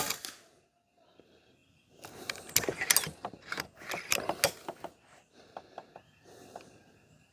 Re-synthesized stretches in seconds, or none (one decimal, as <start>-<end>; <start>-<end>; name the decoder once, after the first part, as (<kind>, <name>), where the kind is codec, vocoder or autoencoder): none